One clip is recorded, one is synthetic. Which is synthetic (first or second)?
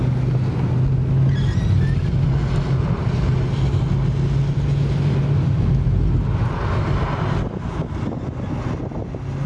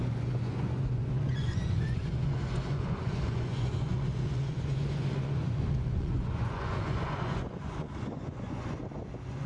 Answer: second